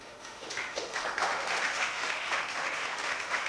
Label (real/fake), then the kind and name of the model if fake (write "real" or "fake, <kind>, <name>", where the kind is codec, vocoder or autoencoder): fake, autoencoder, DAC-VAE